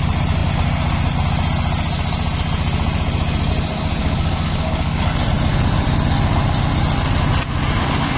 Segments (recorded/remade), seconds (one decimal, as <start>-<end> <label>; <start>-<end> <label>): 0.0-4.0 recorded; 4.0-5.2 remade; 5.2-8.2 recorded